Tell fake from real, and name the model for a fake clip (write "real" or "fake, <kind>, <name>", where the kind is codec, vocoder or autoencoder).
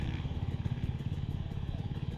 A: fake, codec, DAC